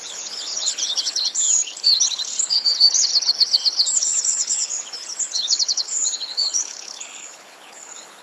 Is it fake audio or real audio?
fake